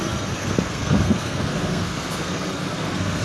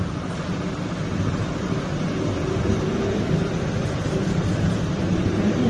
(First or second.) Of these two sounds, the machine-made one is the first